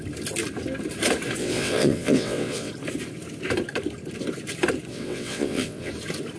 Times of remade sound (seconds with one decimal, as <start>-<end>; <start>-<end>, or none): 1.4-2.7; 4.9-5.9